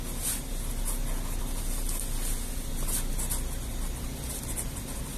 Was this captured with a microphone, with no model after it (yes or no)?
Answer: yes